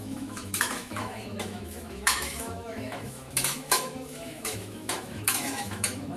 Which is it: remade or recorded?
remade